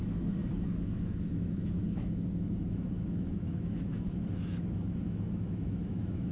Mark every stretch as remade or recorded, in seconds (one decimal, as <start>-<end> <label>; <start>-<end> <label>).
0.0-6.3 remade